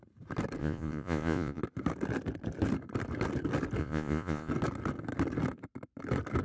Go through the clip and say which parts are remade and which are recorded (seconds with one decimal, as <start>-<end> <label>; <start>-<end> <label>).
0.0-0.6 recorded; 0.6-1.6 remade; 1.6-3.8 recorded; 3.8-4.5 remade; 4.5-6.4 recorded